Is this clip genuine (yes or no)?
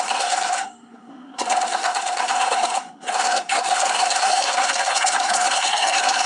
no